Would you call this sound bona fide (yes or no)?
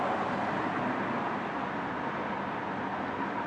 yes